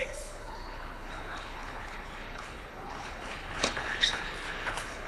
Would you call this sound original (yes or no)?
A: no